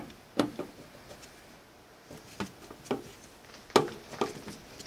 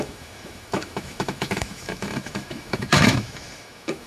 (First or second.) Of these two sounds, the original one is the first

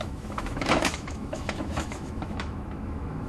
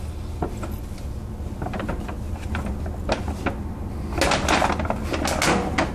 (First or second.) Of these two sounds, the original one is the second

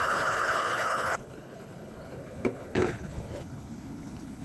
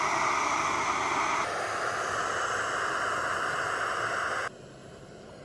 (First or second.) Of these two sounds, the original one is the second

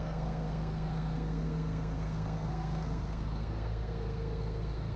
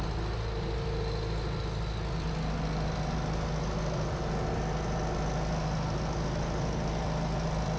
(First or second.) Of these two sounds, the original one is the second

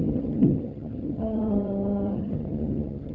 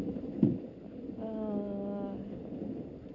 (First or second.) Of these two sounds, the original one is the second